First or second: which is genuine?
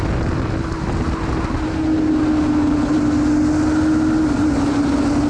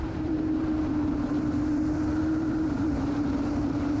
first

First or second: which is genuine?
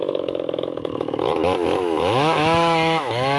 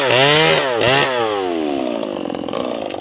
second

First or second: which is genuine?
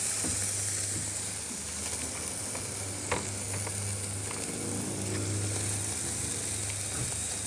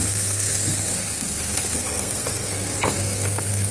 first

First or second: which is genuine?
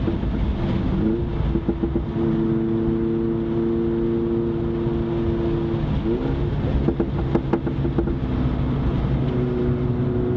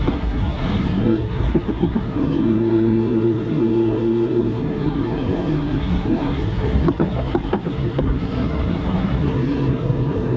first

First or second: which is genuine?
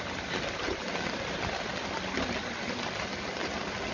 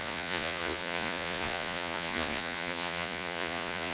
first